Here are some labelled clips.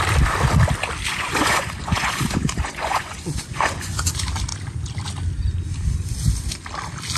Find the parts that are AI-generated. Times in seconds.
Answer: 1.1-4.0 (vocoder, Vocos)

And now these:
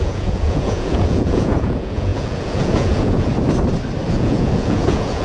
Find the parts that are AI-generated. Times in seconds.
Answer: 0.0-3.3 (vocoder, Vocos); 4.1-5.2

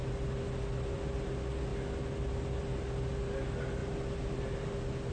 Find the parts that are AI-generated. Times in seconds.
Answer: none

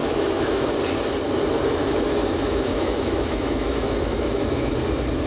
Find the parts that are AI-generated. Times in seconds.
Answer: 0.0-0.7 (autoencoder, DAC-VAE); 1.8-4.7

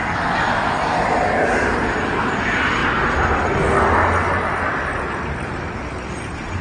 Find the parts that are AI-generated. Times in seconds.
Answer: 0.8-2.8 (vocoder, BigVGAN v2); 6.1-6.6

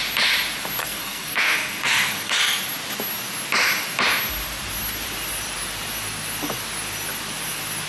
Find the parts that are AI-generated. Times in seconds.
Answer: 0.8-2.6 (codec, SNAC)

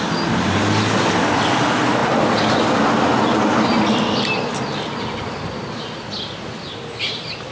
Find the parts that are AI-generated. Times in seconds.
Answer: none